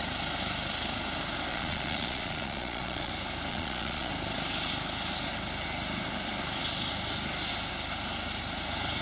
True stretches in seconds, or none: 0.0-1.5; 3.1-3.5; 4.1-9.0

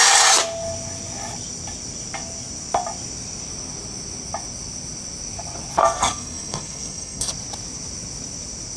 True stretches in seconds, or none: 0.0-5.8; 7.3-8.8

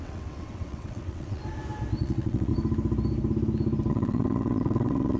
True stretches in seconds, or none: 1.4-2.0; 2.5-3.9

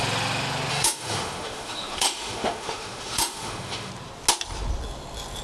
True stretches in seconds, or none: 0.0-0.7; 3.9-5.4

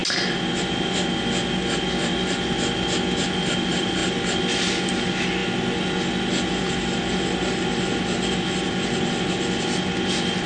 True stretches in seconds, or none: 0.0-10.5

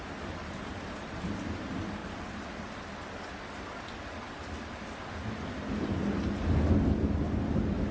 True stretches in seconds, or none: 0.0-7.9

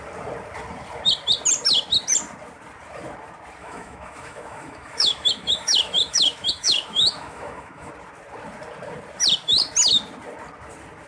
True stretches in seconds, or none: 0.0-3.6; 7.9-11.1

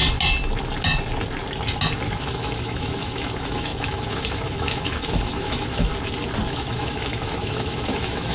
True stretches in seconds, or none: 0.0-2.2; 5.9-6.5